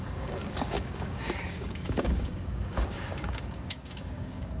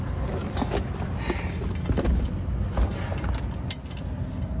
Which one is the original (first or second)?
second